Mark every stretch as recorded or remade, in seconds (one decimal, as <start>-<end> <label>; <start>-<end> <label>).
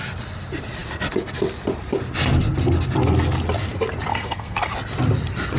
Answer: 0.0-4.1 recorded; 4.1-4.7 remade; 4.7-5.6 recorded